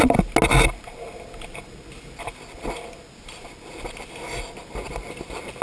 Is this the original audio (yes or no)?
yes